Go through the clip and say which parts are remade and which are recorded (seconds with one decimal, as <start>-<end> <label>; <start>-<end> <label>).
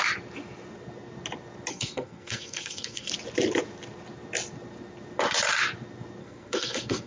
0.0-1.7 recorded; 1.7-3.1 remade; 3.1-6.2 recorded; 6.2-7.1 remade